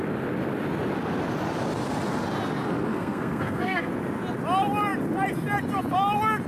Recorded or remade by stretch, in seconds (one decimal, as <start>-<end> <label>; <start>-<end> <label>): 0.0-2.9 recorded; 2.9-3.9 remade; 3.9-6.5 recorded